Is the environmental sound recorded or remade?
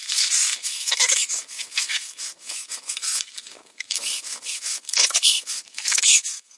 remade